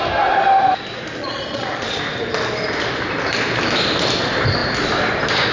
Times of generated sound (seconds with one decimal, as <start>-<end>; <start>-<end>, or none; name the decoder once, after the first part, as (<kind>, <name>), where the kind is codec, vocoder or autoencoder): 1.2-2.0 (vocoder, Vocos)